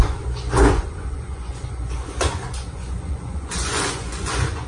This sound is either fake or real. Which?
fake